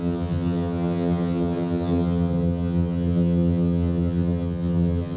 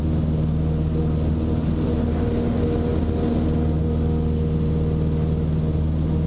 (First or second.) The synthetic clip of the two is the first